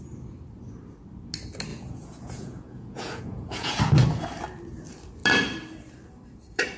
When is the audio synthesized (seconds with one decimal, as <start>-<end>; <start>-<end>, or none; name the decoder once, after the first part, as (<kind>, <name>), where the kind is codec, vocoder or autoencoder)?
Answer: 1.7-3.8 (vocoder, Vocos)